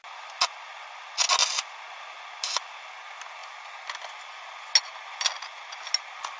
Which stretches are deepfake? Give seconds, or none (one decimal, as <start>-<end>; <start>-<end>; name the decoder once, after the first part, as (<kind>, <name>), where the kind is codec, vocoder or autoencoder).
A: none